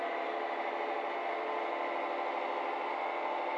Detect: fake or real real